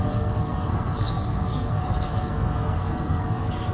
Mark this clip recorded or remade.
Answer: remade